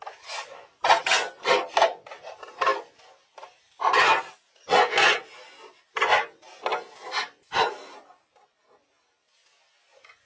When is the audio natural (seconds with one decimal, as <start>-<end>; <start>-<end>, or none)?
0.0-2.7; 4.2-6.7; 7.7-10.3